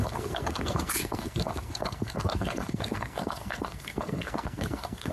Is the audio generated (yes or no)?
yes